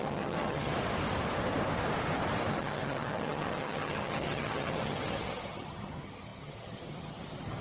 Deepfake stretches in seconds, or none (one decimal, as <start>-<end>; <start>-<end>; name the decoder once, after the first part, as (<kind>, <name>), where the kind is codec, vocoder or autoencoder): 0.0-0.7 (vocoder, HiFi-GAN); 2.5-7.6